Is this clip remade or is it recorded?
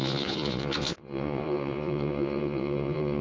remade